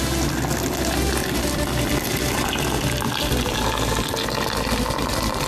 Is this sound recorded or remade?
recorded